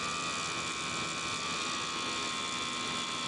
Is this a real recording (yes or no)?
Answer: yes